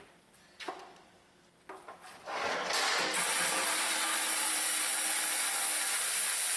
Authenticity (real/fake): real